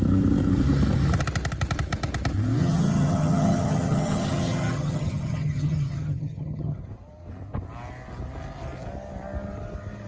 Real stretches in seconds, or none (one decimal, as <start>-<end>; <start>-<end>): 0.0-2.6; 6.8-10.1